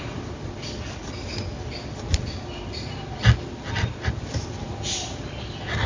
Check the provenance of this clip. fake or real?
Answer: real